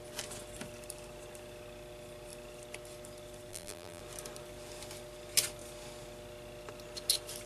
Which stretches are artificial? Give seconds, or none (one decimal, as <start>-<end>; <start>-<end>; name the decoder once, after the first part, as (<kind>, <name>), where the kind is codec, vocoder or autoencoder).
3.5-4.0 (vocoder, BigVGAN v2)